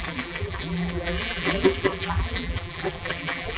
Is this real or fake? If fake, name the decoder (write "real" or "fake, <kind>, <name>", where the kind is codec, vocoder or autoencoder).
fake, vocoder, BigVGAN v2